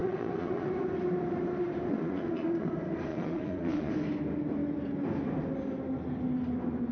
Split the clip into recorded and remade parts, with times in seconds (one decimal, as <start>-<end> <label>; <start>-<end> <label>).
0.0-0.7 remade; 0.7-1.9 recorded; 1.9-2.7 remade; 2.7-3.1 recorded; 3.1-3.9 remade; 3.9-6.9 recorded